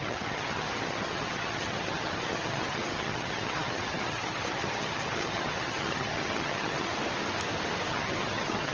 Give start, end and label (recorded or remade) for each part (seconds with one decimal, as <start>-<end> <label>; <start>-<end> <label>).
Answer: 0.0-6.9 remade; 6.9-7.9 recorded; 7.9-8.7 remade